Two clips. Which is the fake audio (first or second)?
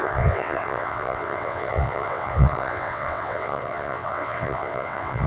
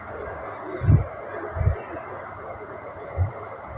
first